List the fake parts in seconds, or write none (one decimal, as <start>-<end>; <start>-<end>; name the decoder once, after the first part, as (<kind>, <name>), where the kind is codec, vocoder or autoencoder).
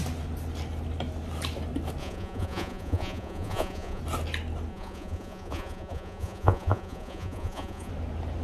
2.0-4.0 (vocoder, Vocos); 4.7-7.9